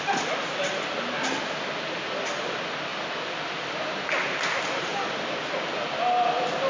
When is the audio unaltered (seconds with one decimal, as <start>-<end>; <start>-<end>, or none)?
0.0-2.9; 4.0-4.9; 5.9-6.7